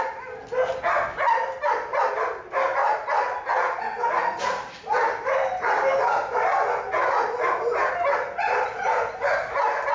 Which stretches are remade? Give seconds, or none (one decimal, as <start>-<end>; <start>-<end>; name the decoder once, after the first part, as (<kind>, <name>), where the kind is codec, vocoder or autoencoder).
none